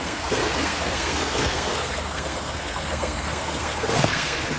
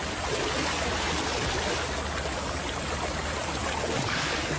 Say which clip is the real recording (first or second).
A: second